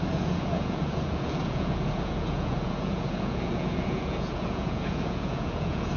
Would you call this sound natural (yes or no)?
no